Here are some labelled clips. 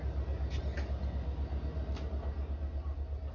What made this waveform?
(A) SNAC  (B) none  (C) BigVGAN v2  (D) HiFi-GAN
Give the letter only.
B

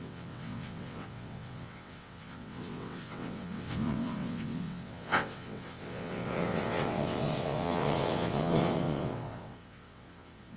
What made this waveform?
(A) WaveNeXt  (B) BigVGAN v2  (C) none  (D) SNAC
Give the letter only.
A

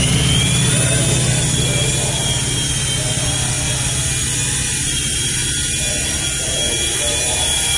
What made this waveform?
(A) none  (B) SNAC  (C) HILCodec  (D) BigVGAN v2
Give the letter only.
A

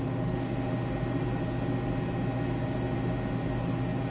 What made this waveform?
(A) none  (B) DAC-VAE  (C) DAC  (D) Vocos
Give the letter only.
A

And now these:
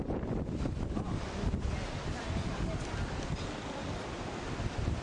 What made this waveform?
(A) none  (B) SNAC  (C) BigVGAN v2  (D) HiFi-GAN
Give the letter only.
A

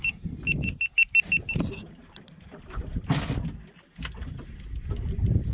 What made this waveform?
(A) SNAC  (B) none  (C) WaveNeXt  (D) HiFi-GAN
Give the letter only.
B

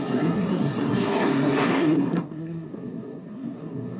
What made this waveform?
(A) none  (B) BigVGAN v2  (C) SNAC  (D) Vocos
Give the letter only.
C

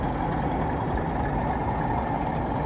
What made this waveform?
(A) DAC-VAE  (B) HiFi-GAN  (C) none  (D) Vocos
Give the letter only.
C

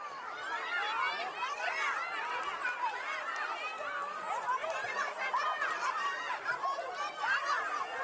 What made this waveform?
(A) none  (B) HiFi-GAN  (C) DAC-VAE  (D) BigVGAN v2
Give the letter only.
A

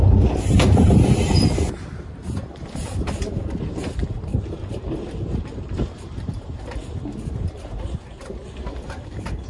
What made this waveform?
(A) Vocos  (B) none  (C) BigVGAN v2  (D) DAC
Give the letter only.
C